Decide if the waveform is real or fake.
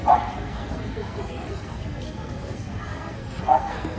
fake